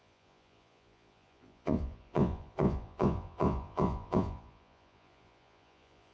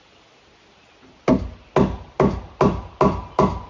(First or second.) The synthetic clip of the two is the first